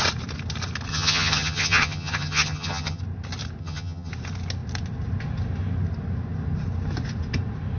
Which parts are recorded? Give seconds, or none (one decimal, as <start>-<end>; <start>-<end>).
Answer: 0.0-0.9; 3.0-3.6; 4.1-7.8